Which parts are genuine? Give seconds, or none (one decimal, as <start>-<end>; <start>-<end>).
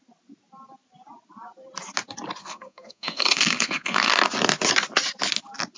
0.0-2.4; 4.1-5.8